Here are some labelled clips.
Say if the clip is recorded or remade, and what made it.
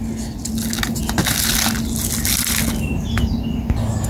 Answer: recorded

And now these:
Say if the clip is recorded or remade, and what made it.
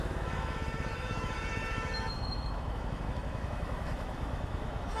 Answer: remade, autoencoder, DAC-VAE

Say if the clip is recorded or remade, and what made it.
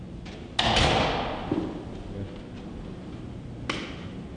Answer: recorded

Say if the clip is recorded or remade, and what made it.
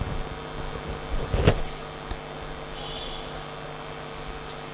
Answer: recorded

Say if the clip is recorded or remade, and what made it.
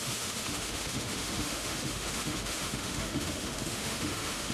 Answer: remade, autoencoder, DAC-VAE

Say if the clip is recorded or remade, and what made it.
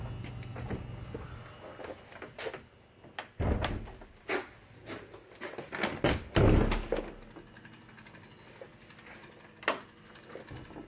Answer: recorded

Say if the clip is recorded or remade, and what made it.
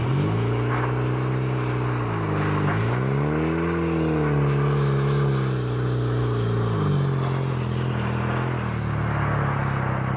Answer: recorded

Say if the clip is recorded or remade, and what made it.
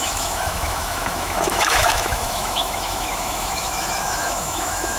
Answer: remade, autoencoder, DAC-VAE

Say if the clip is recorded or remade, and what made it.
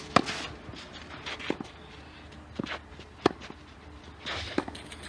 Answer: recorded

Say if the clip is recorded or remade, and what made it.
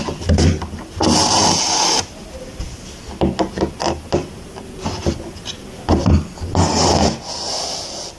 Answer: recorded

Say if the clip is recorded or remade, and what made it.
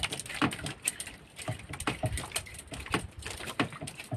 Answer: recorded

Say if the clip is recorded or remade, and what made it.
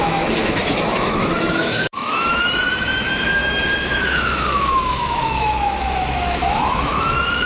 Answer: remade, autoencoder, DAC-VAE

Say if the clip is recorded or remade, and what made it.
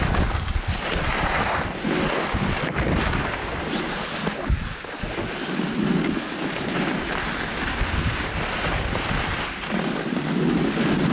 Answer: recorded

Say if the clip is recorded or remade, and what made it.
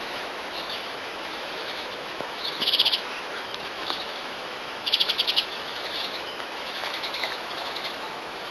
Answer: remade, autoencoder, DAC-VAE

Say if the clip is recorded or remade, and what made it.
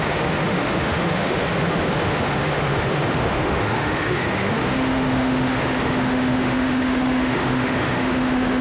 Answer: remade, autoencoder, DAC-VAE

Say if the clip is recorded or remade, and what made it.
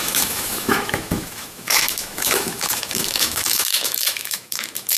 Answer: remade, autoencoder, DAC-VAE